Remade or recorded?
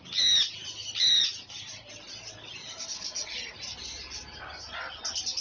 recorded